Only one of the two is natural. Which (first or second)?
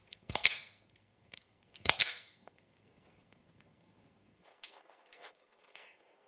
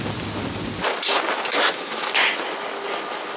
second